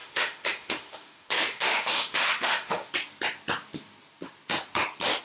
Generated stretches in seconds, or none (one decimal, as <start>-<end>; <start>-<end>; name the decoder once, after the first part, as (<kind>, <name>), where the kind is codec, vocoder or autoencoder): 0.0-2.9 (autoencoder, DAC-VAE)